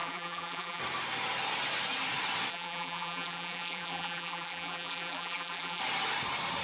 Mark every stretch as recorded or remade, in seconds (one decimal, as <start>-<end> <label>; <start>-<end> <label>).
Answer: 0.0-0.8 remade; 0.8-2.5 recorded; 2.5-5.8 remade; 5.8-6.6 recorded